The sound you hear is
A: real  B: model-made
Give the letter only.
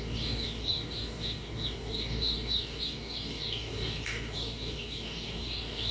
B